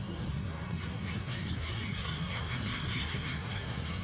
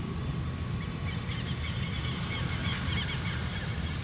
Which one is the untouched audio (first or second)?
second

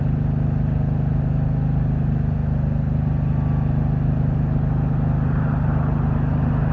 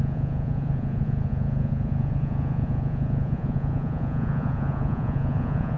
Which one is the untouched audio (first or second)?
first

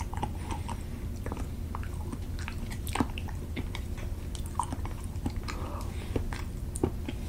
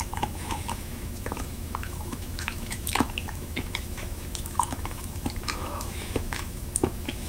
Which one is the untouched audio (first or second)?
first